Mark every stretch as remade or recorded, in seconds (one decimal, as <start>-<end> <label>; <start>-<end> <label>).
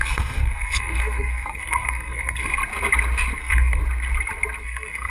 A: 0.0-2.6 remade; 2.6-3.4 recorded; 3.4-3.8 remade; 3.8-4.6 recorded; 4.6-5.1 remade